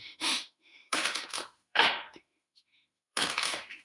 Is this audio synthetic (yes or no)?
yes